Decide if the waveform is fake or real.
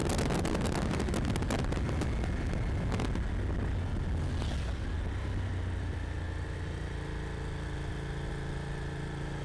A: real